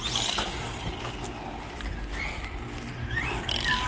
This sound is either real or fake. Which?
real